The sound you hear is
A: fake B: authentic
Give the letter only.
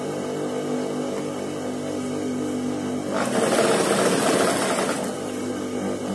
B